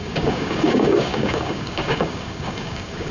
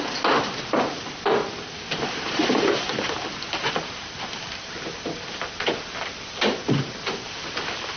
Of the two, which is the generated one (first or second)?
first